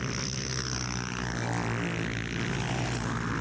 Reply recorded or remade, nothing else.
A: recorded